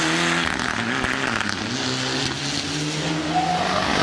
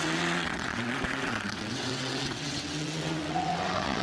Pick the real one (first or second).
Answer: first